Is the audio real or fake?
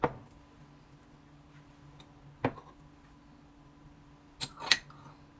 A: real